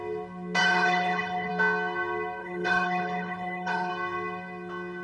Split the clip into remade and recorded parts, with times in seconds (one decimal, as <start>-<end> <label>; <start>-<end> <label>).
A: 0.0-0.6 recorded; 0.6-1.5 remade; 1.5-2.4 recorded; 2.4-3.9 remade; 3.9-5.0 recorded